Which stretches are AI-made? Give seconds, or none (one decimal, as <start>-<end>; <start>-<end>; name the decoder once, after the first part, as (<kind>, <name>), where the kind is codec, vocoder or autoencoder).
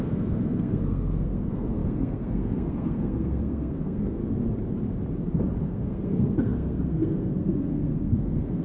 0.0-4.2 (codec, SNAC); 5.6-8.6